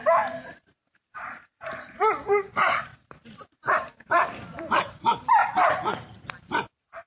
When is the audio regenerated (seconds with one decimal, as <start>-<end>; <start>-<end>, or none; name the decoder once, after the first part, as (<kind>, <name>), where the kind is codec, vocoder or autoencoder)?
0.0-5.4 (vocoder, BigVGAN v2); 6.4-7.1